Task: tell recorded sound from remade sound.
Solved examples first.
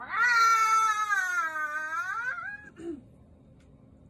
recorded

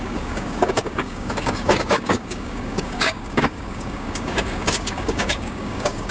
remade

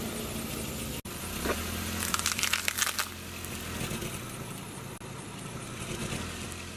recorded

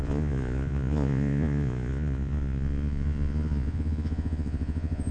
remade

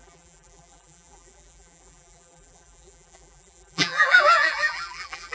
remade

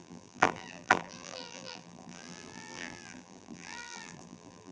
remade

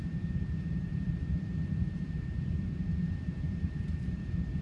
remade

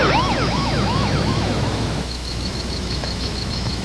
remade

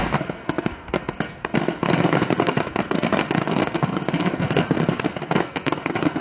remade